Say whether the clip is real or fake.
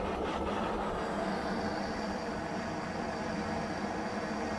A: real